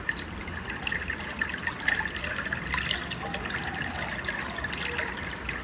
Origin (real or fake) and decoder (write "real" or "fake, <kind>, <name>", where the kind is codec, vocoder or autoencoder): real